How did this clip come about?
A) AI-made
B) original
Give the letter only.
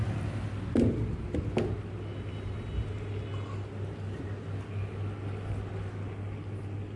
B